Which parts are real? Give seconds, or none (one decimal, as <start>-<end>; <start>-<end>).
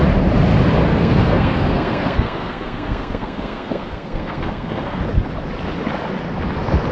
0.0-0.9; 5.0-6.9